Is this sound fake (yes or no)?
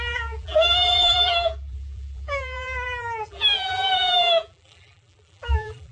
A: yes